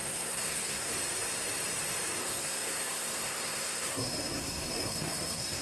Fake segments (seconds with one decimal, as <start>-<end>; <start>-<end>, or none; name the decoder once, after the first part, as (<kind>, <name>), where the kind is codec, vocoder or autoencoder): 0.0-0.9 (codec, SNAC); 2.2-5.6